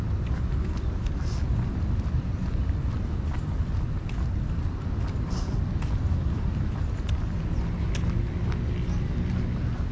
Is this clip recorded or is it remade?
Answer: recorded